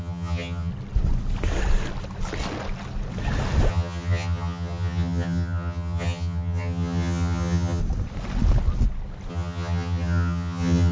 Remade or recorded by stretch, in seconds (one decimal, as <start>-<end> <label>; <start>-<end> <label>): 0.0-0.7 remade; 0.7-3.7 recorded; 3.7-7.8 remade; 7.8-9.3 recorded; 9.3-10.9 remade